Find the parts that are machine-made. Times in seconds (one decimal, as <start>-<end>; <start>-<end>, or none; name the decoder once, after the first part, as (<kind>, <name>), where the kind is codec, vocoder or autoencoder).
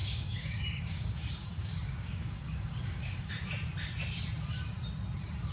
0.0-3.3 (codec, DAC)